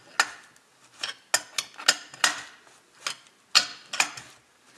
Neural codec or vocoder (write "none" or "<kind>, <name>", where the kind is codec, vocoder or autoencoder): none